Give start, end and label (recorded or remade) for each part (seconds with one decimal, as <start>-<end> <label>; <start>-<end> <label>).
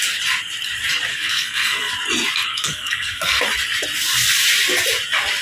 0.0-1.1 recorded; 1.1-1.9 remade; 1.9-2.5 recorded; 2.5-3.4 remade; 3.4-5.4 recorded